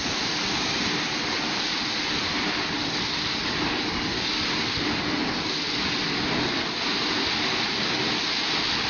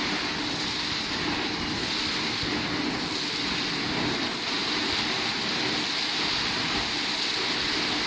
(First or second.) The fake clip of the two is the first